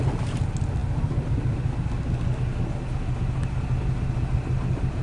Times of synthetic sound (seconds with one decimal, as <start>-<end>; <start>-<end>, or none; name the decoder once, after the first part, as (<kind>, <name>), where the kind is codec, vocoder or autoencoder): none